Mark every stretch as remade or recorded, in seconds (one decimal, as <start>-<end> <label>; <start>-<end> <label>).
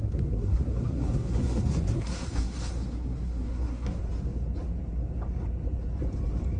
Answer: 0.0-4.0 remade; 4.0-6.6 recorded